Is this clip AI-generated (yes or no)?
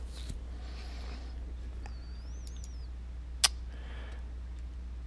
no